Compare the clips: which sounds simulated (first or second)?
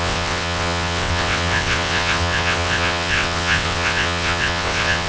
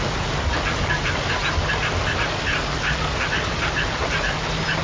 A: first